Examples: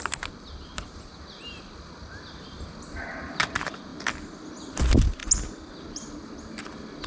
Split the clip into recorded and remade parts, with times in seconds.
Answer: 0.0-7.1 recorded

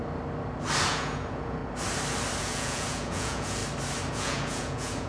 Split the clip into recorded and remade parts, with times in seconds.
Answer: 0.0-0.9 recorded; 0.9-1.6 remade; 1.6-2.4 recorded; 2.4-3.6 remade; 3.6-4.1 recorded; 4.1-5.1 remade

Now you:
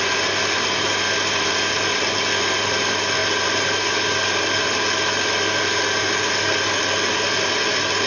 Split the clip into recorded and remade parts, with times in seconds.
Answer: 0.0-8.1 recorded

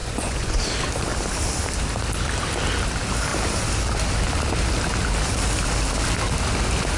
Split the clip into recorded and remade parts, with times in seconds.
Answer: 0.0-0.6 remade; 0.6-7.0 recorded